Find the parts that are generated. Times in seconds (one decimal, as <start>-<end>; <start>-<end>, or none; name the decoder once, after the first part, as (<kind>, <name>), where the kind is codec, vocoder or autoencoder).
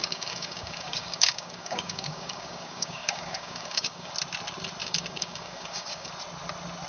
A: 0.0-4.1 (codec, DAC); 4.8-6.1